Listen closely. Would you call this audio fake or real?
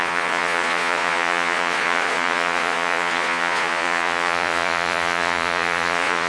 fake